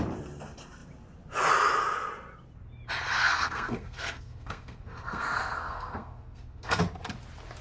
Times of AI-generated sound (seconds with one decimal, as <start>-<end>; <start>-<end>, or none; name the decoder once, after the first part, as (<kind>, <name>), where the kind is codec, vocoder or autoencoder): 3.2-6.8 (codec, SNAC)